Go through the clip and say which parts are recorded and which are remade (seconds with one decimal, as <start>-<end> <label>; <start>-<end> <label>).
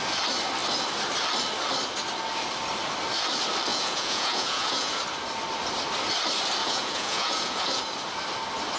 0.0-3.7 recorded; 3.7-5.0 remade; 5.0-6.6 recorded; 6.6-7.8 remade; 7.8-8.8 recorded